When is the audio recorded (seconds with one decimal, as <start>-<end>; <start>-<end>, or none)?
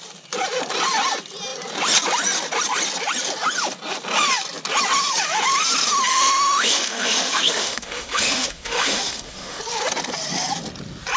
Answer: 0.0-6.1; 9.6-11.2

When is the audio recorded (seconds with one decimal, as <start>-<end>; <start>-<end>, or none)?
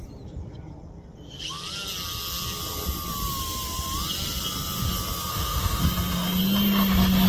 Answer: 0.0-5.3; 5.8-7.3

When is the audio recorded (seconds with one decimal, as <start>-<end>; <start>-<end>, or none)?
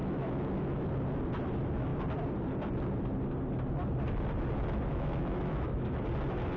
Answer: 0.9-4.9; 6.0-6.6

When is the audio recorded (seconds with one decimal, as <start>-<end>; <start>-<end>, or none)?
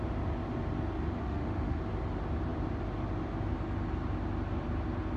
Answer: 0.0-1.2; 1.8-5.2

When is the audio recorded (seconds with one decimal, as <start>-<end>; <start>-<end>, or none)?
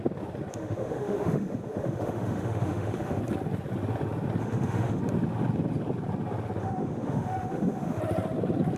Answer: 0.0-0.5; 3.2-4.4; 5.0-6.6; 8.0-8.8